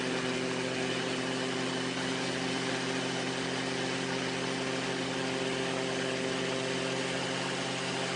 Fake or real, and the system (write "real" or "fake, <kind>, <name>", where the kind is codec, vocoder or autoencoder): real